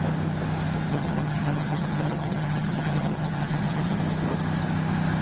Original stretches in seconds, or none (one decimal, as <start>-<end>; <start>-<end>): 0.0-0.9; 4.0-5.2